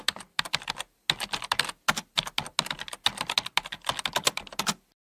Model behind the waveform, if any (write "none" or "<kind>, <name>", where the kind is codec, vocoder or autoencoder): none